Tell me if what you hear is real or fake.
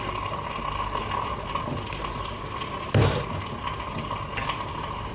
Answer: real